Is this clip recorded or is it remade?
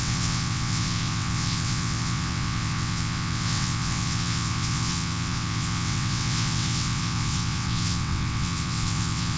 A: remade